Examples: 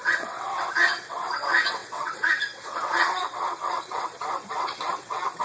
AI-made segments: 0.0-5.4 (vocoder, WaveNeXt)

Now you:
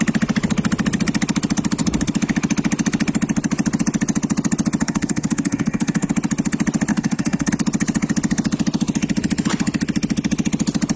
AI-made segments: 4.8-6.1 (codec, SNAC); 6.9-7.5